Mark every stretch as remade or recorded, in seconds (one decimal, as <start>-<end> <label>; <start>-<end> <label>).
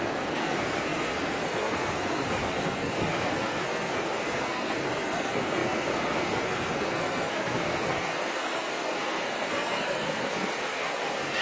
0.0-11.4 remade